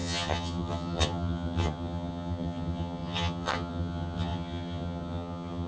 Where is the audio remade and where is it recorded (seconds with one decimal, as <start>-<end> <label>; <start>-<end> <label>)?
0.0-5.7 remade